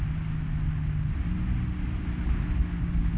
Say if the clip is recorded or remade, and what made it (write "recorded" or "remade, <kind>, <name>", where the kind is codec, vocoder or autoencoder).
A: recorded